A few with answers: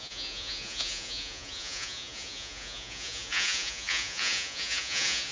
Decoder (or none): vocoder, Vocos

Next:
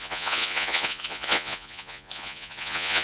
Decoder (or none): vocoder, Vocos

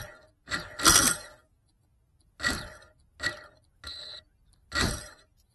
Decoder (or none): none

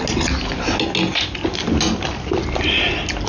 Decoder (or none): none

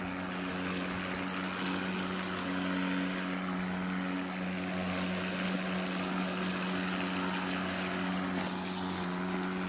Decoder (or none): none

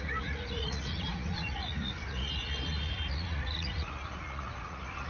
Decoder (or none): vocoder, Vocos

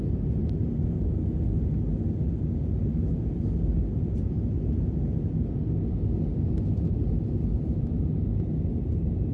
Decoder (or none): none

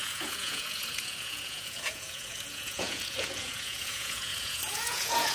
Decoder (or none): vocoder, Vocos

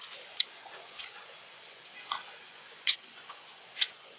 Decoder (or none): vocoder, Vocos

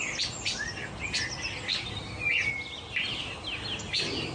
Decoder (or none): none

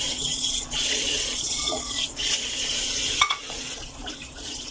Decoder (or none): vocoder, Vocos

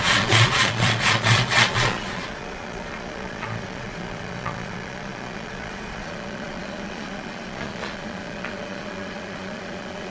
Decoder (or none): vocoder, Vocos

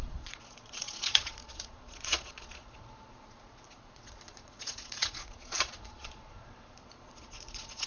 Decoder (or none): vocoder, Vocos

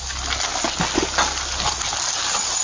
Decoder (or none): none